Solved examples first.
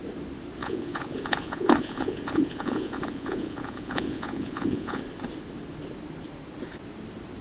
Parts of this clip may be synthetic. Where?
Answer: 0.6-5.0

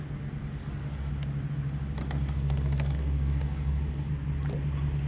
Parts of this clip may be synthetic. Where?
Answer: 0.6-1.1; 2.0-4.1

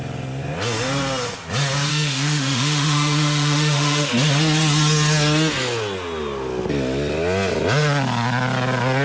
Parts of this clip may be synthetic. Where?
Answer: 1.9-4.1

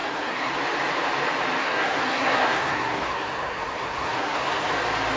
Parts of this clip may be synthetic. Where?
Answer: 0.0-0.5; 1.6-4.7